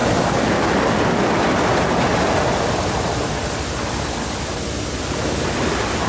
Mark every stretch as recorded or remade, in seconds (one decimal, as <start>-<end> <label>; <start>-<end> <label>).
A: 0.0-6.1 recorded